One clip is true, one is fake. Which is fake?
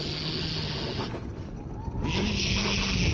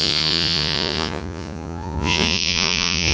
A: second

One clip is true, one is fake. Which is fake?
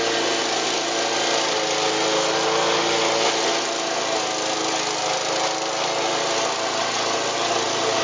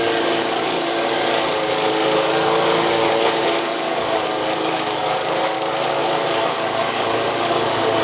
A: second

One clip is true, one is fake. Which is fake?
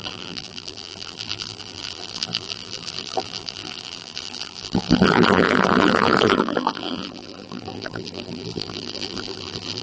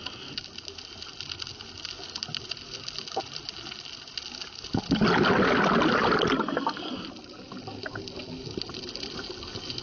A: first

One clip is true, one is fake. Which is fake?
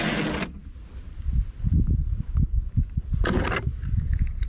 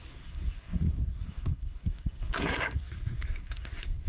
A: second